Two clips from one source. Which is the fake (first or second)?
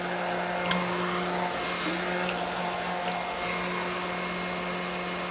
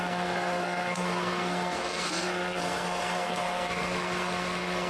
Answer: second